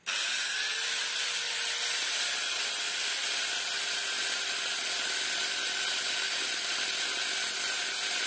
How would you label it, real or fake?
real